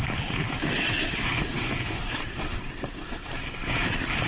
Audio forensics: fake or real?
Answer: real